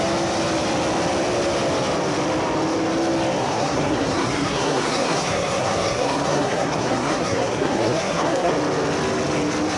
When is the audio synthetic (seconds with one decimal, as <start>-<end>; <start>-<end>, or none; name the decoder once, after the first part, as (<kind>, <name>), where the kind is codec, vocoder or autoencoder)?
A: 3.4-8.5 (codec, SNAC)